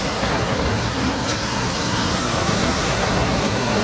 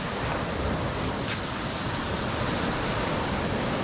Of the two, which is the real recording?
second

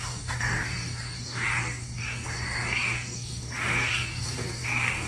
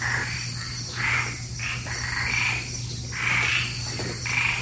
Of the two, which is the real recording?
second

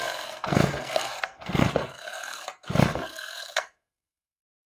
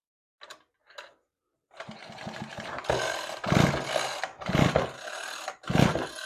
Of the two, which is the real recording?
second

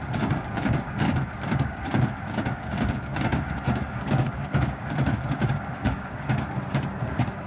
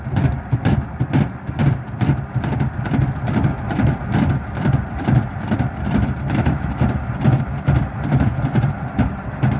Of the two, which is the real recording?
second